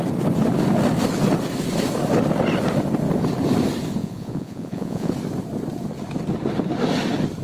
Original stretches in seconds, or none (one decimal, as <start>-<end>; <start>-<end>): 0.0-4.0; 5.1-7.4